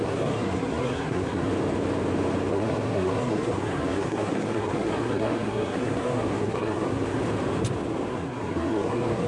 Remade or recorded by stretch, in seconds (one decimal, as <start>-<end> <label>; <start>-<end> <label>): 0.0-1.5 remade; 1.5-2.5 recorded; 2.5-7.2 remade; 7.2-8.1 recorded; 8.1-9.3 remade